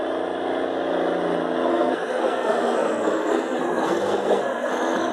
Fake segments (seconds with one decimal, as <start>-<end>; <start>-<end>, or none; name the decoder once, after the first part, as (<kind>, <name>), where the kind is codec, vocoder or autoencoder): 1.7-5.1 (codec, SNAC)